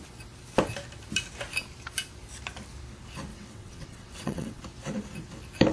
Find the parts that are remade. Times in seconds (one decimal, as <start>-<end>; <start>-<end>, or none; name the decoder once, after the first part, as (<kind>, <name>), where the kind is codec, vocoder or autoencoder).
3.3-4.6 (vocoder, WaveNeXt)